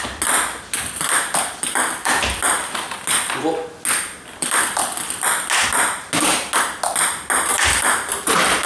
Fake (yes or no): no